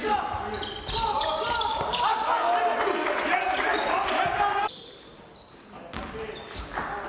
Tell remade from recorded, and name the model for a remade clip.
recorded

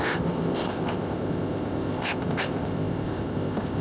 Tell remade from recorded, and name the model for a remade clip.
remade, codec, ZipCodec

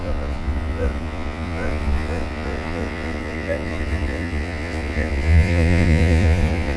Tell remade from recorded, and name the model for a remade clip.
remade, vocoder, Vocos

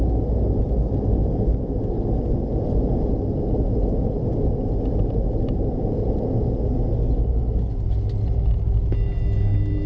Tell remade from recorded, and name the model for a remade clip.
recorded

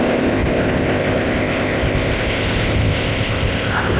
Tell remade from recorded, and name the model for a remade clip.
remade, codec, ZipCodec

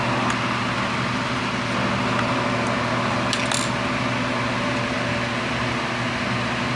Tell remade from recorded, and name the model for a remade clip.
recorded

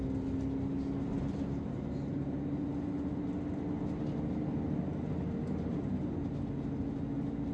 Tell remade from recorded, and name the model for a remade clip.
recorded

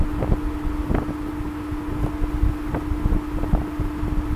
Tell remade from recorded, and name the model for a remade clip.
recorded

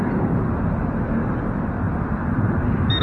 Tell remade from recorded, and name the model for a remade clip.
recorded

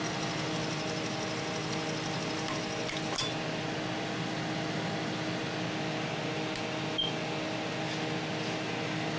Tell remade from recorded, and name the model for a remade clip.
recorded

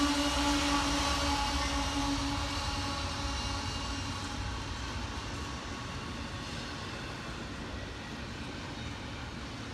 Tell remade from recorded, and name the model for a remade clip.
recorded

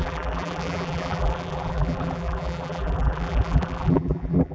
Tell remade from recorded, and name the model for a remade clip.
remade, vocoder, BigVGAN v2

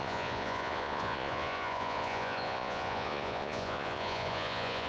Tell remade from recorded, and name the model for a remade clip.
remade, vocoder, Vocos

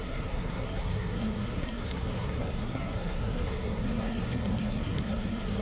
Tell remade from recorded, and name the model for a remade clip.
remade, codec, SNAC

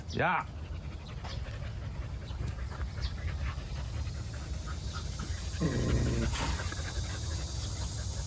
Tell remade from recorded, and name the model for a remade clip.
recorded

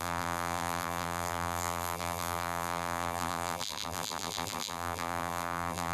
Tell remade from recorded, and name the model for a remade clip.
remade, vocoder, BigVGAN v2